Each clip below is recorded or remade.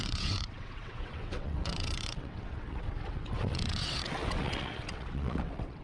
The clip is remade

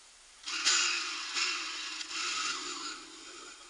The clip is recorded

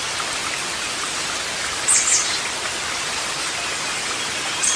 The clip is recorded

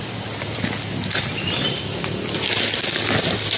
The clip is recorded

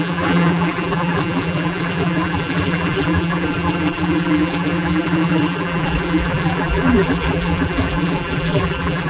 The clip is remade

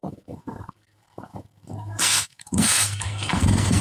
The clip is remade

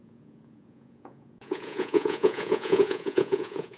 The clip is remade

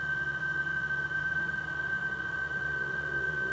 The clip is remade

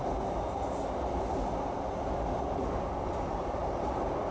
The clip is recorded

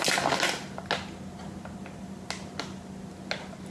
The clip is recorded